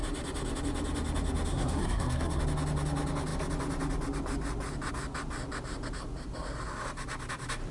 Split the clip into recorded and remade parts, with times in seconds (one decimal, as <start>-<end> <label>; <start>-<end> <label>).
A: 0.0-1.5 recorded; 1.5-2.4 remade; 2.4-7.7 recorded